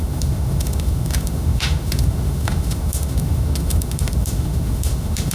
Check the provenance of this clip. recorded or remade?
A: remade